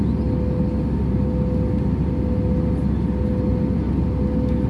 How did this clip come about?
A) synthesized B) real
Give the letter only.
B